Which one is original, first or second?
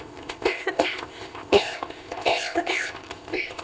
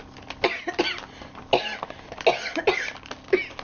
second